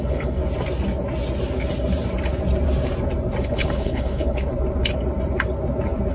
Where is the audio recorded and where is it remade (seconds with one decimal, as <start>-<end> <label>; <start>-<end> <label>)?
0.0-0.4 remade; 0.4-3.4 recorded; 3.4-4.5 remade; 4.5-6.1 recorded